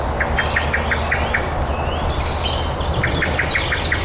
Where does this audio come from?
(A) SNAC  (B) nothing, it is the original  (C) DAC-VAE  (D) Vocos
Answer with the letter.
B